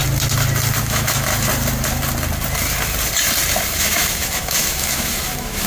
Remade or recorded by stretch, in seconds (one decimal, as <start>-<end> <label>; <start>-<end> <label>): 0.0-0.8 recorded; 0.8-1.3 remade; 1.3-3.8 recorded; 3.8-5.7 remade